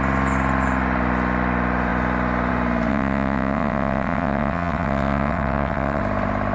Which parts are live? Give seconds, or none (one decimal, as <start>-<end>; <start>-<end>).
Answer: 0.0-2.9; 6.0-6.5